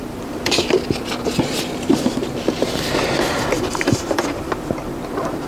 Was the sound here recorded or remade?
remade